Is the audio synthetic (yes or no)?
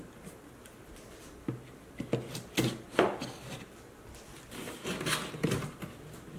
no